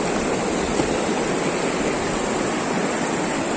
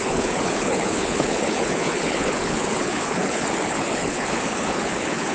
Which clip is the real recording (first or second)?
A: first